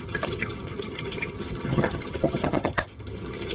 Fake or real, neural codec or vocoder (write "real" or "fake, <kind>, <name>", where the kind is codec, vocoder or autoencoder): fake, vocoder, HiFi-GAN